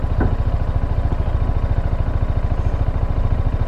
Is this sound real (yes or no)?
yes